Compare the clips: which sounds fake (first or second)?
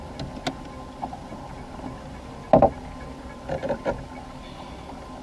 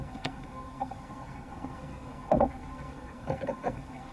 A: second